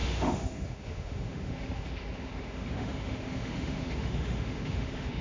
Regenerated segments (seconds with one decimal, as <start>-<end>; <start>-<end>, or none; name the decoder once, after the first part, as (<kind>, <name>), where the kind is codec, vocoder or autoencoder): 0.0-5.2 (autoencoder, DAC-VAE)